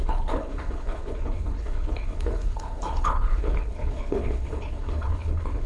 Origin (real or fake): fake